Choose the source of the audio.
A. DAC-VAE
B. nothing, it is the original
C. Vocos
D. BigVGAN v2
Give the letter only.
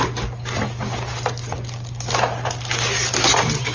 B